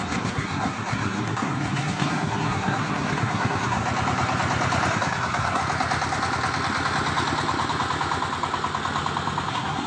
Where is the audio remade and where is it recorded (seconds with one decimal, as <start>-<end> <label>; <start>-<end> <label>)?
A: 0.0-3.8 remade; 3.8-4.9 recorded; 4.9-5.6 remade; 5.6-9.5 recorded; 9.5-9.9 remade